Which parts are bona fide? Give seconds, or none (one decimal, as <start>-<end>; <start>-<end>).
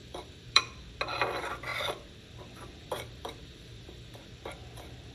0.6-2.8; 4.3-5.1